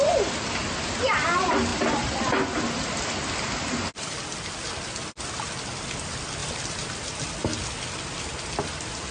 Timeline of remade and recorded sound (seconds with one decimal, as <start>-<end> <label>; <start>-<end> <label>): 0.0-6.4 recorded; 6.4-7.1 remade; 7.1-9.1 recorded